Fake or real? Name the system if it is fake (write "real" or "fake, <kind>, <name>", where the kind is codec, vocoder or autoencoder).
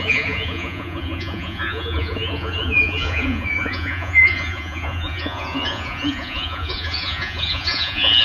fake, vocoder, Vocos